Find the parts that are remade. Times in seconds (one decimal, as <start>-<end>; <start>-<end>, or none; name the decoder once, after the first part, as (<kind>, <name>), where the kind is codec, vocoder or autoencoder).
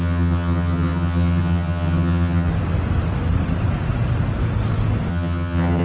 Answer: 0.0-2.5 (vocoder, HiFi-GAN); 5.1-5.8